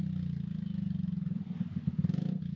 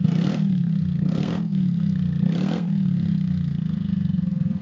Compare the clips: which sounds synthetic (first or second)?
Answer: second